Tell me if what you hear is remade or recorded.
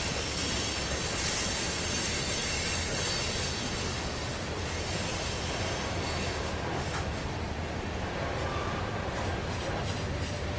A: recorded